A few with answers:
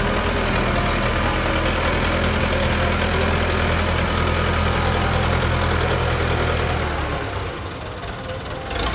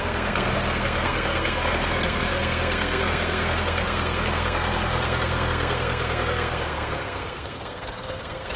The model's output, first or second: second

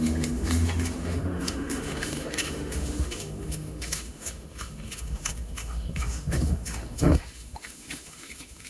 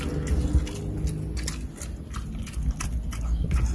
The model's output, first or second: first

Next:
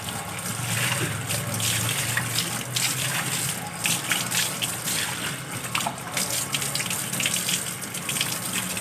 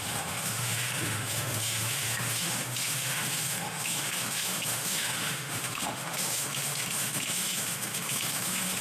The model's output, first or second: second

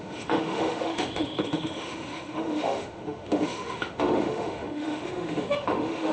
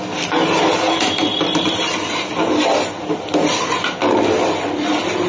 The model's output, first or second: first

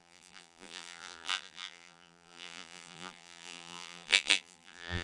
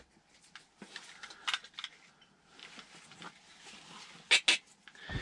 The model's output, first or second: first